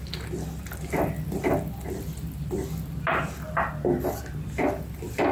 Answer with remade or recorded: recorded